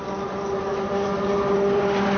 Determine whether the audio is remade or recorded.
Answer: recorded